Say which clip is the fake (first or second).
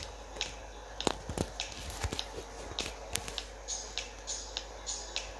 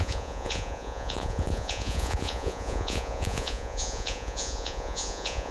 second